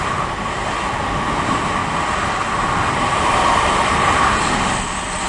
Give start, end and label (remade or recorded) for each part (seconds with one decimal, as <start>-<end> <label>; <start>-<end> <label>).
0.0-5.3 recorded